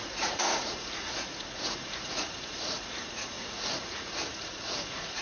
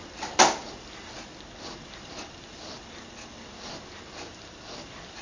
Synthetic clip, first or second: first